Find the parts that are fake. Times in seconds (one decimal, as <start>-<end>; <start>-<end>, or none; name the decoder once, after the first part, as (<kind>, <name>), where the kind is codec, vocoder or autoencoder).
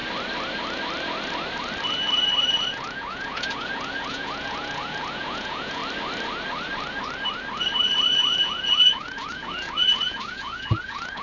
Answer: 2.6-5.8 (vocoder, Vocos); 7.8-11.2